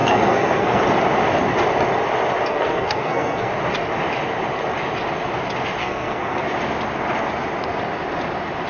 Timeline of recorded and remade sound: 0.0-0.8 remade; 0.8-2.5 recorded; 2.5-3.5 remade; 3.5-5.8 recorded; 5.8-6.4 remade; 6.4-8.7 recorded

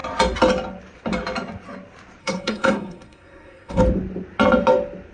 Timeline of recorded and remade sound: 0.0-2.2 recorded; 2.2-3.8 remade; 3.8-5.1 recorded

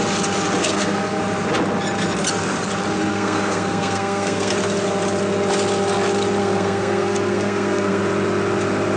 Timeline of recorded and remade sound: 0.0-0.6 recorded; 0.6-1.2 remade; 1.2-3.1 recorded; 3.1-4.5 remade; 4.5-6.4 recorded; 6.4-8.0 remade; 8.0-9.0 recorded

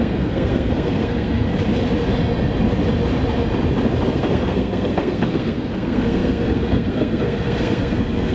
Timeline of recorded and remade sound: 0.0-1.5 remade; 1.5-4.1 recorded; 4.1-8.3 remade

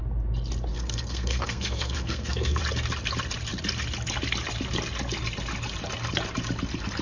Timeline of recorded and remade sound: 0.0-0.7 recorded; 0.7-2.6 remade; 2.6-7.0 recorded